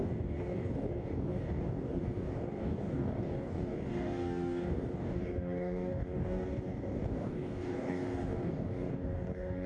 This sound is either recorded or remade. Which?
remade